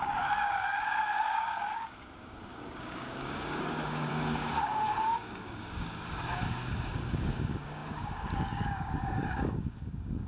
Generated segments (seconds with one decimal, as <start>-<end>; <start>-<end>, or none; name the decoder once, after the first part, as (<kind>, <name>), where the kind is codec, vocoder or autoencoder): 0.0-10.3 (codec, DAC)